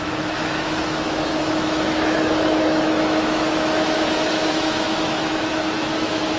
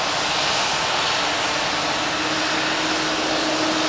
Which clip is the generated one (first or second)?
first